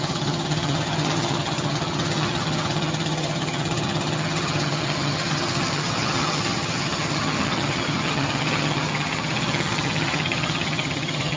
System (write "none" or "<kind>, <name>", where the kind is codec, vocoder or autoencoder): vocoder, HiFi-GAN